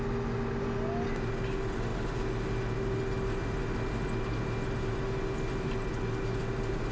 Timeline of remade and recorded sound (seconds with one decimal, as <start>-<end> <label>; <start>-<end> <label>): 0.0-6.9 recorded